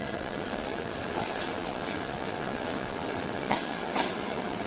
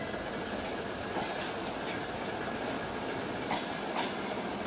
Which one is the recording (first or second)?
second